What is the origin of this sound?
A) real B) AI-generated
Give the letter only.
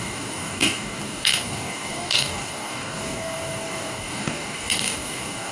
B